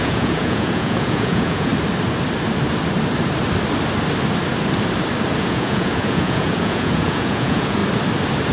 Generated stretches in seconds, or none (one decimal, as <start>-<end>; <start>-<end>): 0.0-1.7; 5.4-7.8